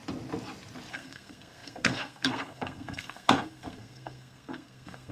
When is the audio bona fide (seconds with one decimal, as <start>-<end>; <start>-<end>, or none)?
0.0-0.9